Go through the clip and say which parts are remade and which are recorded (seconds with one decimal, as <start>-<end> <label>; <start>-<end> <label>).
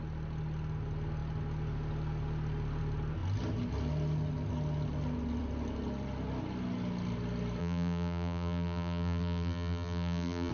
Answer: 0.0-7.6 recorded; 7.6-10.5 remade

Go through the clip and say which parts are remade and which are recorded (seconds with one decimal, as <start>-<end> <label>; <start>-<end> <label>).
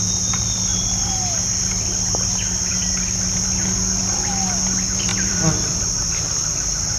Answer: 0.0-5.1 recorded; 5.1-6.1 remade; 6.1-7.0 recorded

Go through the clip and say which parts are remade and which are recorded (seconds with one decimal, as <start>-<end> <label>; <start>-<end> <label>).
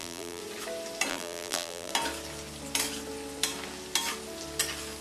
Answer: 0.0-0.4 remade; 0.4-1.1 recorded; 1.1-1.9 remade; 1.9-5.0 recorded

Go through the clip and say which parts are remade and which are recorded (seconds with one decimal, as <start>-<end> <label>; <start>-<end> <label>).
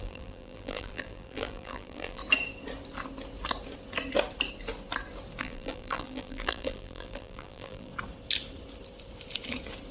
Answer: 0.0-2.2 remade; 2.2-5.4 recorded; 5.4-7.9 remade; 7.9-9.9 recorded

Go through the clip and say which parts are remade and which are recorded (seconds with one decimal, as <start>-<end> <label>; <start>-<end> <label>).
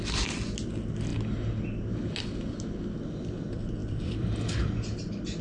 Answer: 0.0-3.8 recorded; 3.8-4.8 remade; 4.8-5.4 recorded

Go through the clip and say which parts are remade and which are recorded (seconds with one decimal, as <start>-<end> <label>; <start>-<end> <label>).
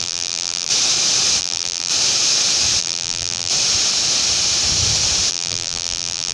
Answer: 0.0-0.7 remade; 0.7-1.4 recorded; 1.4-1.9 remade; 1.9-2.8 recorded; 2.8-3.5 remade; 3.5-5.3 recorded; 5.3-6.3 remade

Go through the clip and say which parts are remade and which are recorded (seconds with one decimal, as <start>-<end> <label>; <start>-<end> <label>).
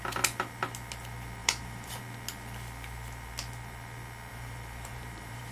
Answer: 0.0-1.4 recorded; 1.4-2.0 remade; 2.0-4.3 recorded; 4.3-5.5 remade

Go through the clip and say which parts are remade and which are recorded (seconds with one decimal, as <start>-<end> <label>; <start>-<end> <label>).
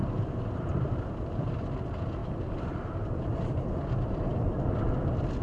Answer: 0.0-1.5 remade; 1.5-2.2 recorded; 2.2-3.7 remade; 3.7-5.4 recorded